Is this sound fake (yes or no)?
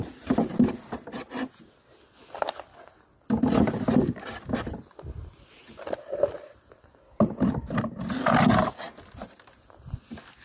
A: no